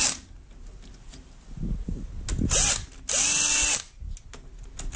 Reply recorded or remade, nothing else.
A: recorded